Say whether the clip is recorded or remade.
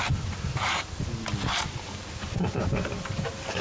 recorded